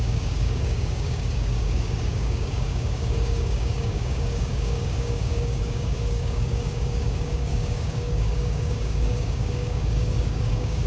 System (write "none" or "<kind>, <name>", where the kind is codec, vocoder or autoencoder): codec, DAC